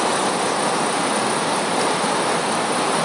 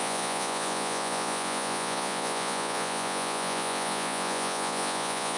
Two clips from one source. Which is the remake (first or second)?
second